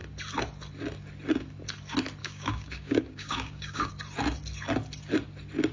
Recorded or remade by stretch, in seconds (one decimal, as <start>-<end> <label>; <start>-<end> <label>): 0.0-2.2 recorded; 2.2-3.9 remade; 3.9-5.7 recorded